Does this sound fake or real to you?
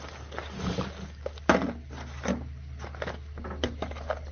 real